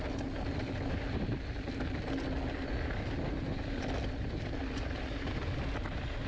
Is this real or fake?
real